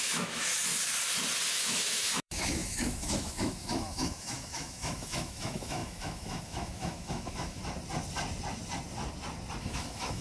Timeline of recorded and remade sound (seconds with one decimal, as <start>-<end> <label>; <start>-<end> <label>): 0.0-0.6 remade; 0.6-1.6 recorded; 1.6-7.6 remade; 7.6-9.6 recorded; 9.6-10.2 remade